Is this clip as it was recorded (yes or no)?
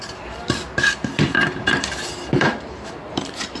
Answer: no